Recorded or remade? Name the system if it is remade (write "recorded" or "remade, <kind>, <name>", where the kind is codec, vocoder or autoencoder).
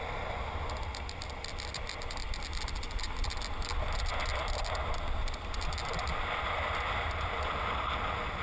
recorded